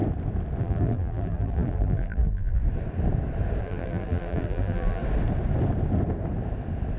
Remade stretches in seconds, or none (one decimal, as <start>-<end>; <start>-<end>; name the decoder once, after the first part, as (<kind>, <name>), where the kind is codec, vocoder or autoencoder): 0.6-2.6 (vocoder, BigVGAN v2); 3.6-5.0

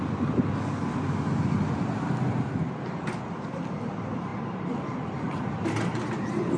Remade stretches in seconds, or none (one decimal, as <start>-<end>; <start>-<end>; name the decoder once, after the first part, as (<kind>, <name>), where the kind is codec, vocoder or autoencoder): none

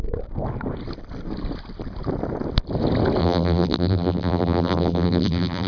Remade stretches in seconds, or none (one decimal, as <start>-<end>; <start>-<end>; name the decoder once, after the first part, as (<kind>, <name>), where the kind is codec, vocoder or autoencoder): 3.2-5.7 (vocoder, BigVGAN v2)

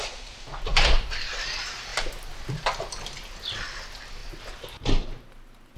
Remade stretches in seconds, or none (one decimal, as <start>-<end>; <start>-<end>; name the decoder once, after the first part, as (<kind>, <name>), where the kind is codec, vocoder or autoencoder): 0.7-1.3 (vocoder, BigVGAN v2)

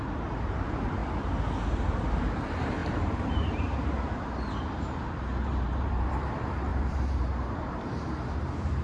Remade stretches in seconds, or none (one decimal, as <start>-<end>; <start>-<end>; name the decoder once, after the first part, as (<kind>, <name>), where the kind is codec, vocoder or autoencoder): 0.0-1.0 (vocoder, BigVGAN v2); 1.6-8.8